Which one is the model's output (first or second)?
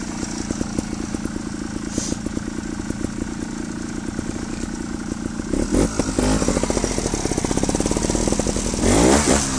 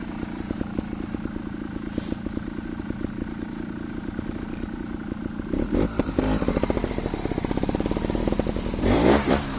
second